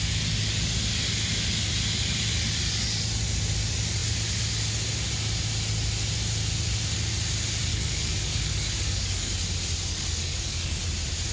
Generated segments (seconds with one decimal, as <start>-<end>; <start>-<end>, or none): 7.7-9.3; 9.9-10.8